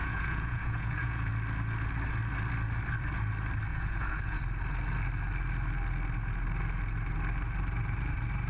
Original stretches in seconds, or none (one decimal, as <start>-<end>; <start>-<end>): 1.3-3.7; 4.4-8.5